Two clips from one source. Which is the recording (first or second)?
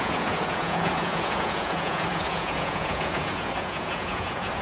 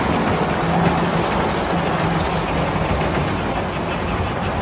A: second